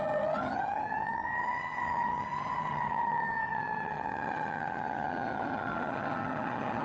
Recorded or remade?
remade